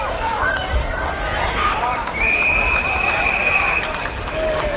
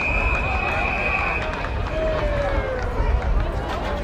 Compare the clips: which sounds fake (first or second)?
first